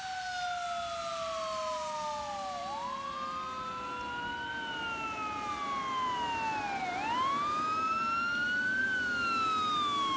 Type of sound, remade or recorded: recorded